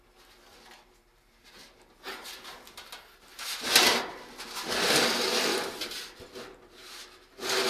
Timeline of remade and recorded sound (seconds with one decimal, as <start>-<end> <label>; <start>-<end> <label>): 0.0-7.7 recorded